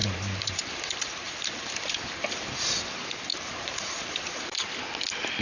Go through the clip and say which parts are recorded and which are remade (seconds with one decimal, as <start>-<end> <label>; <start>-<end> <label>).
0.0-2.2 remade; 2.2-3.3 recorded; 3.3-4.7 remade; 4.7-5.4 recorded